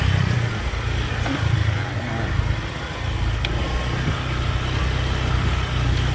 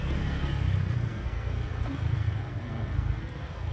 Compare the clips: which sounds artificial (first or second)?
second